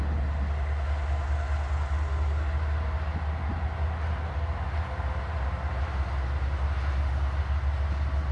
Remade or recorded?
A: recorded